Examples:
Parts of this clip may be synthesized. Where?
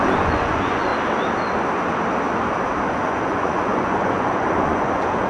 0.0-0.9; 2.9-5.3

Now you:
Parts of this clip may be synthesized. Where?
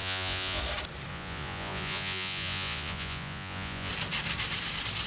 0.0-0.6; 1.1-3.9